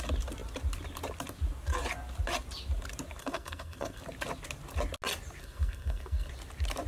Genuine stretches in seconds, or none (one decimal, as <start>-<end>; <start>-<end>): 0.0-3.2; 4.0-5.4; 6.3-6.9